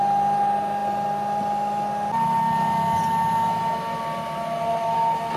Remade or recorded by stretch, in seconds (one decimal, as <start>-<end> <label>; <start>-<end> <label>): 0.0-5.4 recorded

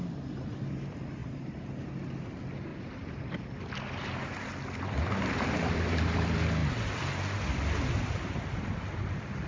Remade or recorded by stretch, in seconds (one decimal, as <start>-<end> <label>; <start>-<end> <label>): 0.0-1.2 recorded; 1.2-1.8 remade; 1.8-2.7 recorded; 2.7-3.7 remade; 3.7-9.5 recorded

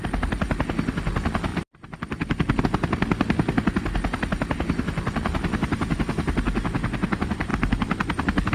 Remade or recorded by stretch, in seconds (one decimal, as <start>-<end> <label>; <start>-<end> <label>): 0.0-1.5 recorded; 1.5-2.6 remade; 2.6-8.5 recorded

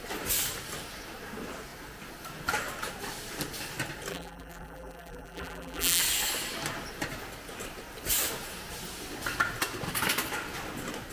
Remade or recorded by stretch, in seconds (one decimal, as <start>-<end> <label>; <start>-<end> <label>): 0.0-4.1 recorded; 4.1-6.0 remade; 6.0-11.1 recorded

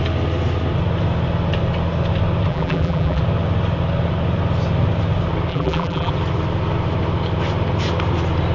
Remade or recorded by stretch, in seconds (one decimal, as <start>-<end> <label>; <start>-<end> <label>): 0.0-2.5 recorded; 2.5-3.2 remade; 3.2-5.5 recorded; 5.5-6.1 remade; 6.1-8.5 recorded

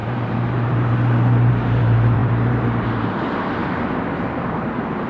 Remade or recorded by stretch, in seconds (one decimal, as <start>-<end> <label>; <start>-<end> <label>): 0.0-3.6 remade; 3.6-4.4 recorded; 4.4-5.1 remade